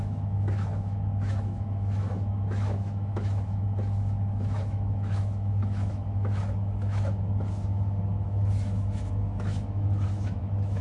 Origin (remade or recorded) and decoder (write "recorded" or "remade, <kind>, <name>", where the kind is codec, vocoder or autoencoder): remade, autoencoder, DAC-VAE